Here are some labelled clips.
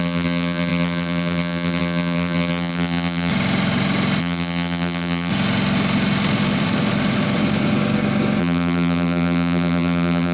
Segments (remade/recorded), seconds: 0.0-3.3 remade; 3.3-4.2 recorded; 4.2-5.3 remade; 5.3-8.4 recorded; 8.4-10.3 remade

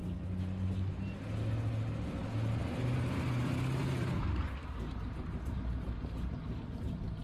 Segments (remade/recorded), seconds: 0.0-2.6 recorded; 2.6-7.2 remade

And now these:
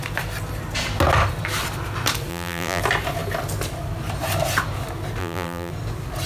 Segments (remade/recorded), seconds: 0.0-2.3 recorded; 2.3-2.8 remade; 2.8-5.2 recorded; 5.2-5.7 remade; 5.7-6.3 recorded

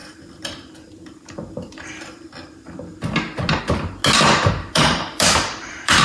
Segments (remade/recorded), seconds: 0.0-3.6 recorded; 3.6-4.0 remade; 4.0-4.5 recorded; 4.5-6.0 remade

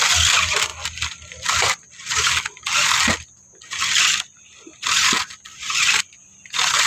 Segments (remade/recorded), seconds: 0.0-0.7 recorded; 0.7-3.6 remade; 3.6-6.9 recorded

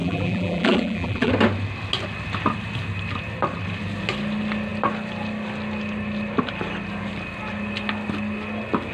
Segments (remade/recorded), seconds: 0.0-1.3 remade; 1.3-8.9 recorded